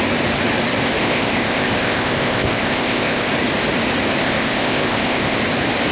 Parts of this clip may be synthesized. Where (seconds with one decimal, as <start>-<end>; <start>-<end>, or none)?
1.0-3.3; 4.2-5.4